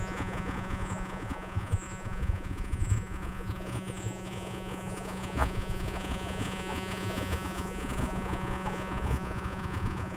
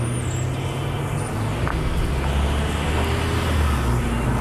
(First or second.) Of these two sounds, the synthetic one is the first